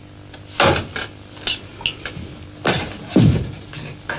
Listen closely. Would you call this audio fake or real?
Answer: real